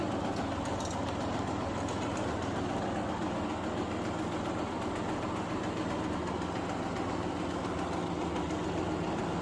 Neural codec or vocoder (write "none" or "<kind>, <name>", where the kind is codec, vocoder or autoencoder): none